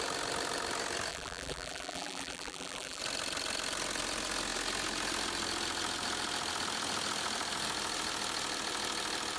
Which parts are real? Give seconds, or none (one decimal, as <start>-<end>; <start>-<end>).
0.0-1.1; 3.0-9.4